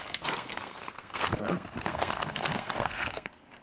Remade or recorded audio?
remade